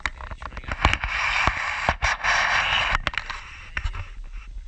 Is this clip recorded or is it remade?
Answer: recorded